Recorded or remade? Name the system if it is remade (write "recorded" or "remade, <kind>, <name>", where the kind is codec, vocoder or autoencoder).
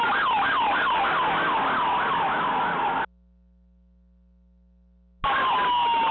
recorded